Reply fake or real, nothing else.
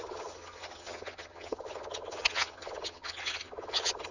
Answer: fake